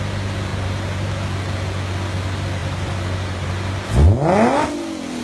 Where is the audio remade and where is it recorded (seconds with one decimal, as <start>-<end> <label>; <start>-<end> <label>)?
0.0-0.5 recorded; 0.5-1.1 remade; 1.1-2.6 recorded; 2.6-3.5 remade; 3.5-5.2 recorded